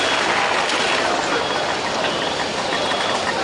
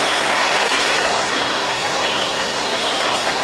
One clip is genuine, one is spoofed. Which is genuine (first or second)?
first